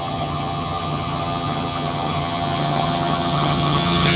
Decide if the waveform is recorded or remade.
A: remade